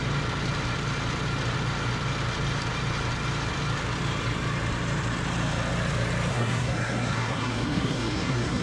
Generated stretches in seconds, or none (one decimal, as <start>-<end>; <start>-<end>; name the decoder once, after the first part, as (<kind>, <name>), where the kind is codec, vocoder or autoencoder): 6.3-8.6 (codec, SNAC)